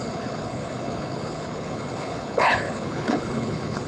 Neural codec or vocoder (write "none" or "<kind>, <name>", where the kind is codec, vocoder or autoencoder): codec, HILCodec